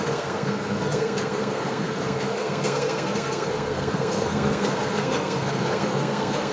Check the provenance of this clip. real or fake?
fake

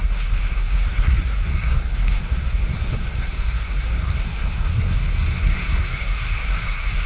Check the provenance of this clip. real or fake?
fake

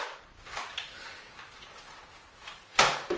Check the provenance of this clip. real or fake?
real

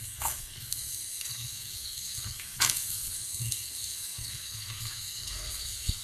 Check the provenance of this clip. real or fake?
fake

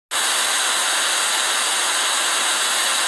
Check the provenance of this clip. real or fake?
real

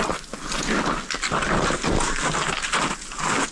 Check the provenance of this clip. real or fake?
real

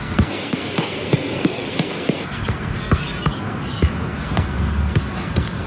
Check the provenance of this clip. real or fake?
fake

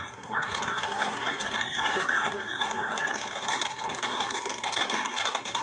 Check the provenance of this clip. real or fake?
fake